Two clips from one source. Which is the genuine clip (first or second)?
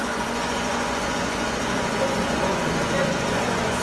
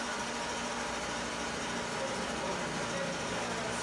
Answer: second